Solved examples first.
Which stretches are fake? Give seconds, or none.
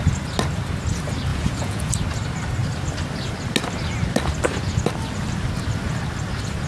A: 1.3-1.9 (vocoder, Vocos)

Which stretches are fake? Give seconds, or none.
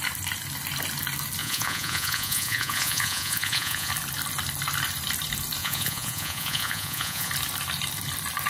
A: 1.4-3.9 (vocoder, Vocos); 5.6-7.3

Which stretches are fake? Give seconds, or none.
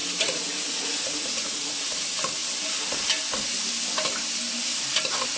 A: 0.0-1.9 (vocoder, Vocos)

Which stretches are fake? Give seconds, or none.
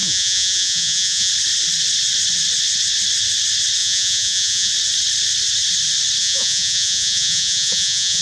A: 0.0-1.3 (vocoder, Vocos); 3.8-4.7; 6.2-8.2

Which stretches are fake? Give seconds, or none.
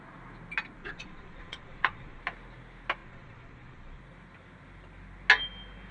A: 0.8-2.2 (vocoder, Vocos); 3.0-4.0